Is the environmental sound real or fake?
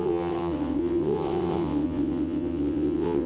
fake